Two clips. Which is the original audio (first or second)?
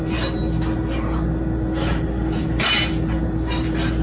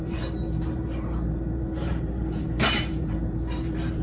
first